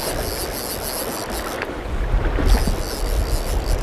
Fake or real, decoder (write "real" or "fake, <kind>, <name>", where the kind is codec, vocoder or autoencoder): real